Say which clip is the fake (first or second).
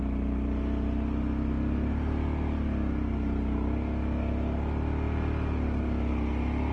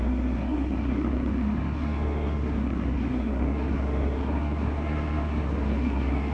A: second